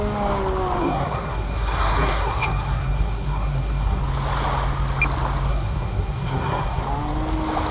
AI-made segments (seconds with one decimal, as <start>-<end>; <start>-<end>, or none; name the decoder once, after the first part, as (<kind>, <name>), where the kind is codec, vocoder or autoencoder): 0.8-4.0 (codec, SNAC); 5.5-6.8